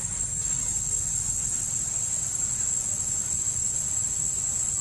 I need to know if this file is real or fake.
fake